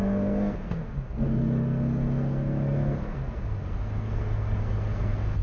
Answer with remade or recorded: remade